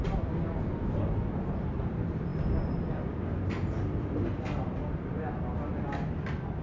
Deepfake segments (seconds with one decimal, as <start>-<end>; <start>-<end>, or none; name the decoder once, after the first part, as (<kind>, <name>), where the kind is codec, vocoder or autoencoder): none